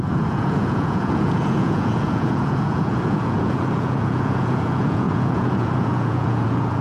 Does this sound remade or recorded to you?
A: remade